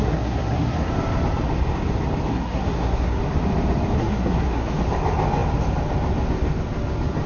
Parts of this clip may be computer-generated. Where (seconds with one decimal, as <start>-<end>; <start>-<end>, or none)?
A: 0.0-0.9; 2.3-3.2; 3.9-4.7